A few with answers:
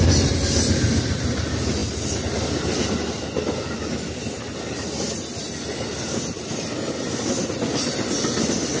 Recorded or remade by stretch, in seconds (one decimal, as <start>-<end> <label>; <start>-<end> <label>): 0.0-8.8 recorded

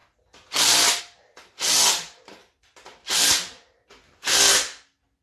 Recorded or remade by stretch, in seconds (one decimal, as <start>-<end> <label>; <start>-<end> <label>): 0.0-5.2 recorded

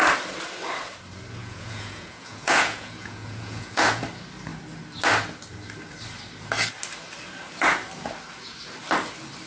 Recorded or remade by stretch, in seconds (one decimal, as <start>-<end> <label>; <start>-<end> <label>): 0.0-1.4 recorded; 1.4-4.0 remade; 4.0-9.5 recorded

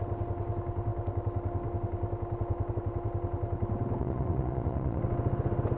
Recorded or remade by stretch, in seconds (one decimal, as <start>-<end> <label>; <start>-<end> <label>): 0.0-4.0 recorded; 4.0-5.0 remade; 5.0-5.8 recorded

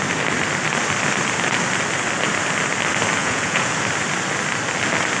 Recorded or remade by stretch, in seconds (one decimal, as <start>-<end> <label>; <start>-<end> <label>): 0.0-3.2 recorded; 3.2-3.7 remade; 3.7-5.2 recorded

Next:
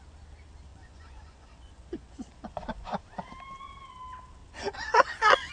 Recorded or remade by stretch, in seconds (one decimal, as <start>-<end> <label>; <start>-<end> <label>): 0.0-0.7 recorded; 0.7-3.0 remade; 3.0-4.4 recorded; 4.4-5.5 remade

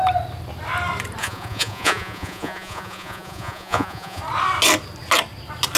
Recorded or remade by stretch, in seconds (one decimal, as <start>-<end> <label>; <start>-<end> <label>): 0.0-1.2 recorded; 1.2-4.2 remade; 4.2-5.8 recorded

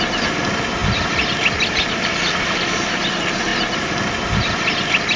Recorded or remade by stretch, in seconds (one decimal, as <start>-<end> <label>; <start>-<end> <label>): 0.0-5.2 recorded